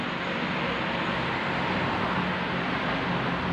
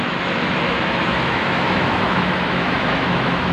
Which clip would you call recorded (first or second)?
first